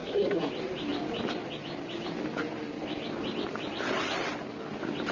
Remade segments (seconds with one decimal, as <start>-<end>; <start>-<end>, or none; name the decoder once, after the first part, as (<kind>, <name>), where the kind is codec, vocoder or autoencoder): 0.0-0.5 (codec, SNAC)